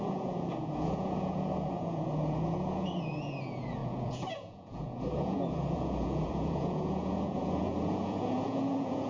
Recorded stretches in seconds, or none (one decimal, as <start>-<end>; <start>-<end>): none